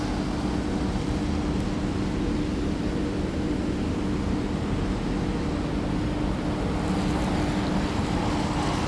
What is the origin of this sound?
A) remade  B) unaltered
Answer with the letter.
B